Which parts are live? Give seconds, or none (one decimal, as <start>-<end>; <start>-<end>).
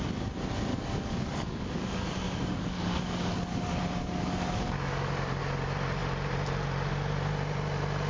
0.0-0.7; 5.4-8.1